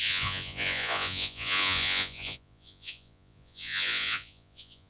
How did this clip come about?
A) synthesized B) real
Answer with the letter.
A